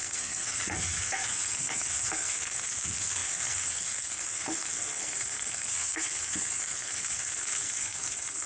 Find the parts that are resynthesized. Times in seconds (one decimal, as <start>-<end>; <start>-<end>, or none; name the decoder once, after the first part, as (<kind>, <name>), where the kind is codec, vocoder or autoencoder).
0.0-8.5 (codec, SNAC)